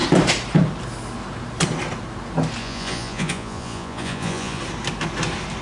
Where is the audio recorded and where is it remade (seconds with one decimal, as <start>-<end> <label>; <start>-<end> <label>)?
0.0-2.6 recorded; 2.6-4.6 remade; 4.6-5.6 recorded